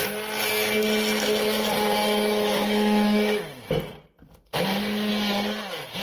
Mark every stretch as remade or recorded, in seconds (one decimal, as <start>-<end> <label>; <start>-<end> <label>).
0.0-2.0 recorded; 2.0-3.4 remade; 3.4-6.0 recorded